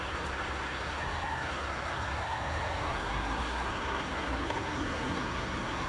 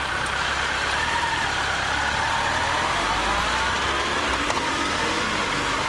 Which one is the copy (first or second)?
first